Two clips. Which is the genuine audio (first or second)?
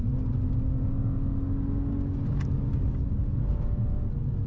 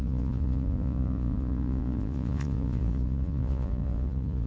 first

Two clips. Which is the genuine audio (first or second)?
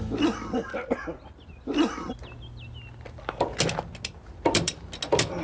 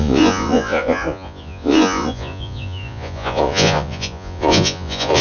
first